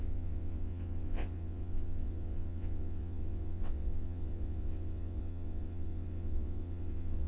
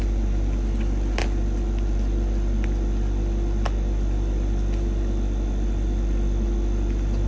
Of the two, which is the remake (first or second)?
first